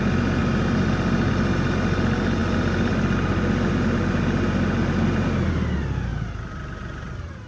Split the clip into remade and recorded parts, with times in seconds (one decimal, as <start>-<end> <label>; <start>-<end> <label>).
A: 0.0-7.5 recorded